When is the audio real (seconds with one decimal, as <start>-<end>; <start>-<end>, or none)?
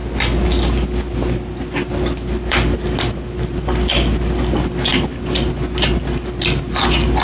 0.0-7.2